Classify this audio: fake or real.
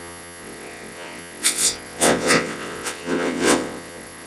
fake